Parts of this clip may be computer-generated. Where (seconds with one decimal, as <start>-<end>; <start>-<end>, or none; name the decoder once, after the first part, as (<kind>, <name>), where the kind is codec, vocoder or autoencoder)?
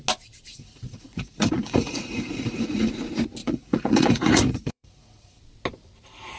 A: 0.5-2.9 (vocoder, Vocos); 3.4-5.4